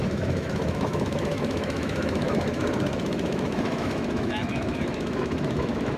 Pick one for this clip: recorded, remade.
remade